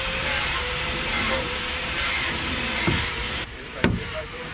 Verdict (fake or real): fake